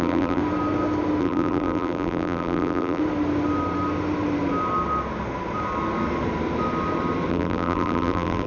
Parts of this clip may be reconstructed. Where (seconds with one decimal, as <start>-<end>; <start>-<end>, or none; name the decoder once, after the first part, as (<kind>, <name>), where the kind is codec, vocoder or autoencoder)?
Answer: 0.0-0.4 (vocoder, BigVGAN v2); 1.2-3.0; 7.3-8.5